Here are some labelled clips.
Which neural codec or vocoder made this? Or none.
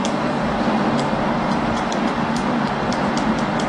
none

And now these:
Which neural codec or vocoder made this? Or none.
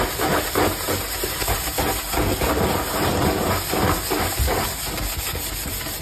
none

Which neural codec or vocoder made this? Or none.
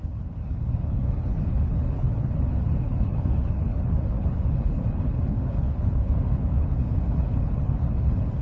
codec, HILCodec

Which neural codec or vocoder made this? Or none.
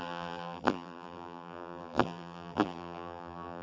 vocoder, BigVGAN v2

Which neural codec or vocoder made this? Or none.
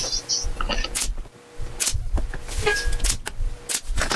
none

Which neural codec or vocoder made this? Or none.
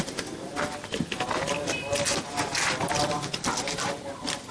none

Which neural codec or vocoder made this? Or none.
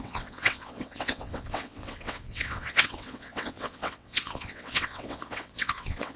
vocoder, WaveNeXt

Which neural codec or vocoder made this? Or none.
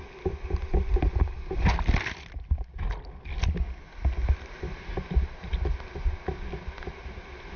none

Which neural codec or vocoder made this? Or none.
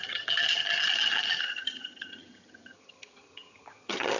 vocoder, HiFi-GAN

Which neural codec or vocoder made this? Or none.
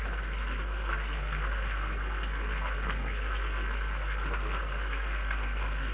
codec, SNAC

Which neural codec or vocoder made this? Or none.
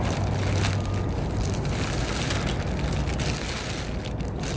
none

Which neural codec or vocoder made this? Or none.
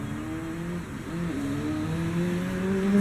none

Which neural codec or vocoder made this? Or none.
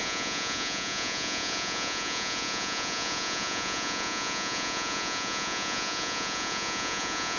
vocoder, Vocos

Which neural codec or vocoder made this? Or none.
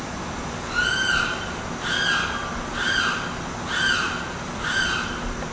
none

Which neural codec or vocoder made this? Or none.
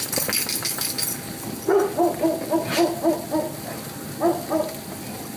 none